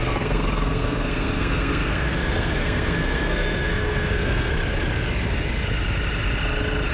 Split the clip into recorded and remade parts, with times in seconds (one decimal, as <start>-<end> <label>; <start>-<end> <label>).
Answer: 0.0-4.5 remade; 4.5-6.9 recorded